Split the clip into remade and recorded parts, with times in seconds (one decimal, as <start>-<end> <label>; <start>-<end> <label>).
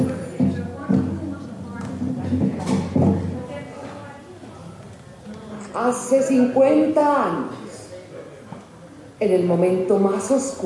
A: 0.0-10.7 recorded